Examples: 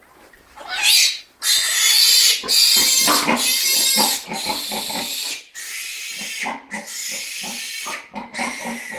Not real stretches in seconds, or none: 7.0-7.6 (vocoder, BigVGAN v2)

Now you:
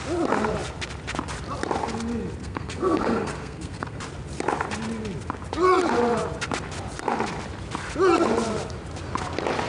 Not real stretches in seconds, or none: 2.4-4.0 (codec, SNAC)

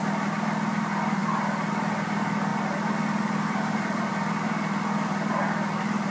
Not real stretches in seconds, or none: none